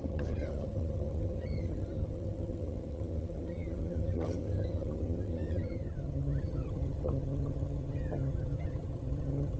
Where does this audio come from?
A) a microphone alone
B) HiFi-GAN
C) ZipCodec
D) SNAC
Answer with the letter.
B